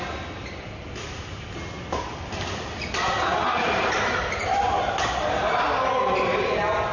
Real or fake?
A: real